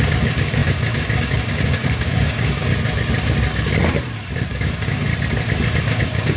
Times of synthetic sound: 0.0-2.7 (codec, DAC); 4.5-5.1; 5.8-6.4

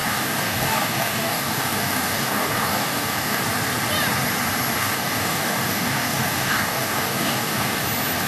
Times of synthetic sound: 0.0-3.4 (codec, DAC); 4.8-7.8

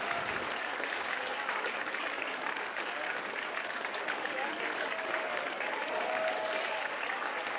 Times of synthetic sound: 0.0-7.6 (codec, DAC)